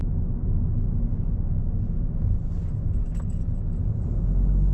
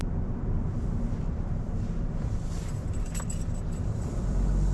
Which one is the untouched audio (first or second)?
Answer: first